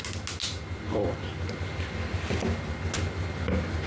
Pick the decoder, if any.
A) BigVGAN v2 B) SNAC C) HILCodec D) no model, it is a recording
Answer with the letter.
D